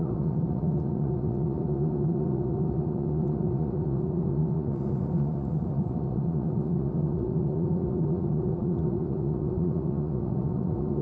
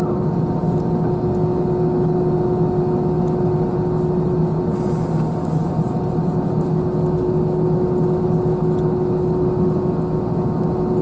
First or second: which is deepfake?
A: first